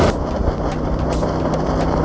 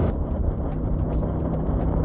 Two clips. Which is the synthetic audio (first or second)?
second